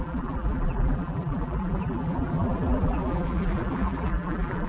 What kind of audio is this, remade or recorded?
remade